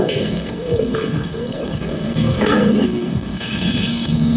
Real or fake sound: fake